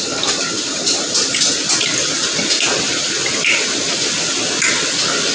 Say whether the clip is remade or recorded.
recorded